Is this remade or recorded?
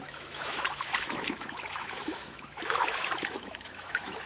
remade